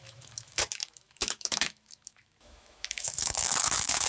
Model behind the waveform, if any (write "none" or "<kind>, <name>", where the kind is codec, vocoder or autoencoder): autoencoder, DAC-VAE